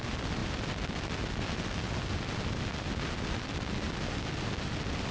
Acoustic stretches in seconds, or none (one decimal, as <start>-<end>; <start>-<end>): 0.0-5.1